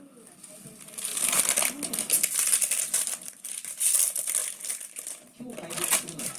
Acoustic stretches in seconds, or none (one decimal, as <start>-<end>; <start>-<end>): 0.0-6.4